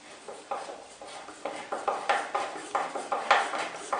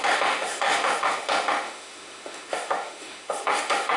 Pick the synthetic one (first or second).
second